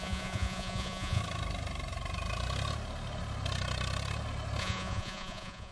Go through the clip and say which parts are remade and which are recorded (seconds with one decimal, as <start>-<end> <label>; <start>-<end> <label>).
0.0-1.2 remade; 1.2-4.6 recorded; 4.6-5.7 remade